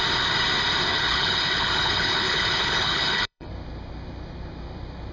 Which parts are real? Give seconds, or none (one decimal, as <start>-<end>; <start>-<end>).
0.0-0.9; 3.5-5.1